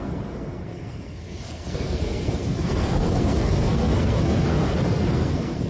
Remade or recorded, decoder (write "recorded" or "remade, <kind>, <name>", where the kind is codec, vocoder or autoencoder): remade, codec, SNAC